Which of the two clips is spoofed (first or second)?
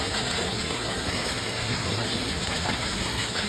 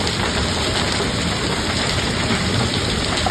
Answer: first